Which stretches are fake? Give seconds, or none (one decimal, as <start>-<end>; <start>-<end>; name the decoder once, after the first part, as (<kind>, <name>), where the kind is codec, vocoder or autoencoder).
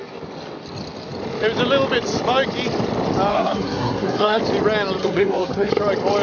3.3-4.4 (codec, SNAC); 5.0-5.7